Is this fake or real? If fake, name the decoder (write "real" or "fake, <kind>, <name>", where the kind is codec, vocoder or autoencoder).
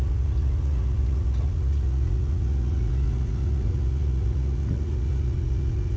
fake, vocoder, Vocos